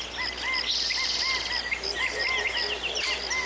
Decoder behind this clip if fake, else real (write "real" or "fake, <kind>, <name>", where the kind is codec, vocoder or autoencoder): real